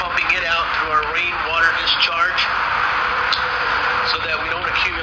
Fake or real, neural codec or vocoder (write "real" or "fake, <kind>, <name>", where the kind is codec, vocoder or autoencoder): real